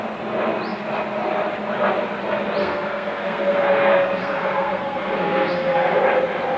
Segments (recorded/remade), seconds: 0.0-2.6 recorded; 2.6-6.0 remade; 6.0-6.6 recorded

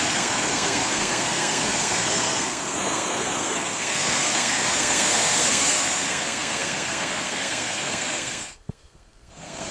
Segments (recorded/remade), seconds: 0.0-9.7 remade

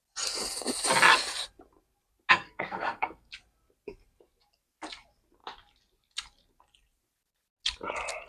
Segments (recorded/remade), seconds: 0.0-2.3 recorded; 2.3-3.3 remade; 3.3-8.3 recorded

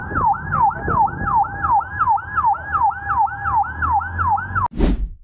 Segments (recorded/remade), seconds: 0.0-5.2 recorded

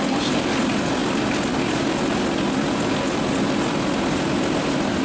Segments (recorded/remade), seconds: 0.0-5.0 recorded